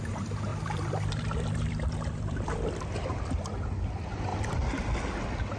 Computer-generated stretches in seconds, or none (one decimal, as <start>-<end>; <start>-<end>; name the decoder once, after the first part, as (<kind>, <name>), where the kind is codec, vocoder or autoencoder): 0.5-3.9 (vocoder, BigVGAN v2); 4.3-5.1